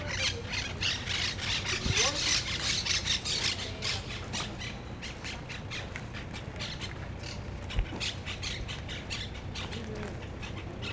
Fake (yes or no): no